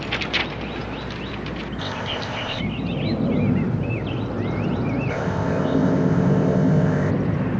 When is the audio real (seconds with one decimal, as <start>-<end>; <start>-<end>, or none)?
0.0-1.8; 2.6-5.1; 7.1-7.6